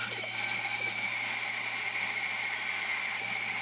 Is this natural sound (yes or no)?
yes